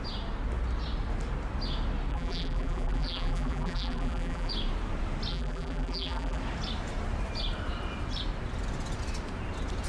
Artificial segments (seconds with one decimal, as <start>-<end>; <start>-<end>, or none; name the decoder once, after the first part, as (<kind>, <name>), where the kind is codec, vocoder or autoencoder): 2.1-4.5 (vocoder, BigVGAN v2); 5.3-6.4